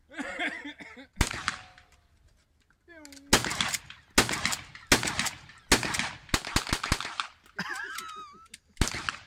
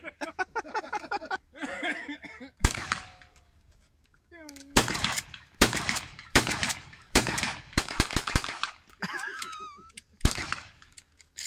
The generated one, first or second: second